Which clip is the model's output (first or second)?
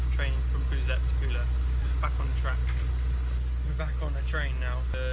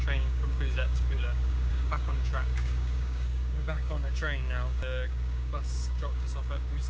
second